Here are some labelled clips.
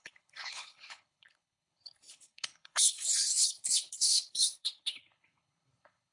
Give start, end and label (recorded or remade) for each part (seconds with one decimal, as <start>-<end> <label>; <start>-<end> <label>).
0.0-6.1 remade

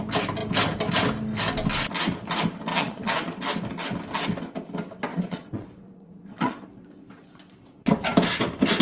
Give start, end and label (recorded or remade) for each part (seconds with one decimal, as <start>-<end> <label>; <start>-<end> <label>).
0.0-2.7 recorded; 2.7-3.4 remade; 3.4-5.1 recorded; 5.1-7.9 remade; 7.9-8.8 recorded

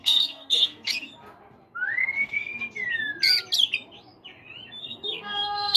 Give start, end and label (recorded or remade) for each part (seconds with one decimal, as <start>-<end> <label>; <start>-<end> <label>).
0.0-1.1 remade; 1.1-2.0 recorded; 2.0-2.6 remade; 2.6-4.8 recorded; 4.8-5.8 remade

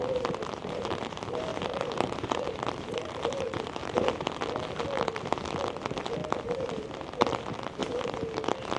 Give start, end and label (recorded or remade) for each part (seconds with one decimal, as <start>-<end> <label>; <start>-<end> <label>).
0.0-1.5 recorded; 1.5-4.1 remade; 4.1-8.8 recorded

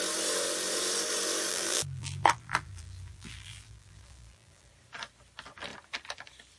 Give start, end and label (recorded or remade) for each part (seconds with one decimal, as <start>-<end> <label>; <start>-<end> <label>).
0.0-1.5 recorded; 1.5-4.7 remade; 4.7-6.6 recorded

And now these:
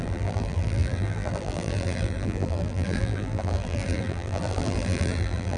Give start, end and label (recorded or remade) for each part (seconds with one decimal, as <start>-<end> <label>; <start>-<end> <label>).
0.0-5.6 remade